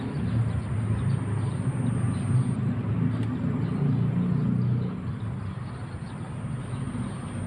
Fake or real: real